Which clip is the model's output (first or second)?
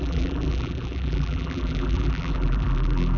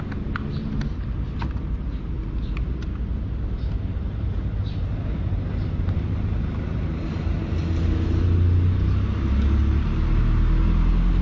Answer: first